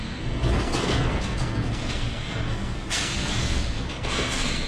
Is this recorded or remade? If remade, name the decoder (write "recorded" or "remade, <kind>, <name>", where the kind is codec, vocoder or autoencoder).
remade, codec, SNAC